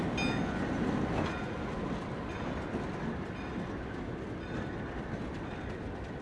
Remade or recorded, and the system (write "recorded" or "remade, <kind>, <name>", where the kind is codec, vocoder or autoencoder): recorded